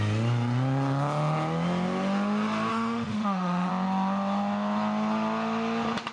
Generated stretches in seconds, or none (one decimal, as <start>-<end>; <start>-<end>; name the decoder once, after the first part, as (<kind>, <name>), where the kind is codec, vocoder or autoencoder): 2.7-3.7 (autoencoder, DAC-VAE)